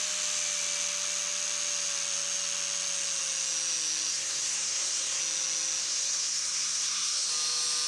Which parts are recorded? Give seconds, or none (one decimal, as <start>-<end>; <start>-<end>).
0.0-4.1; 5.2-5.8; 7.3-7.9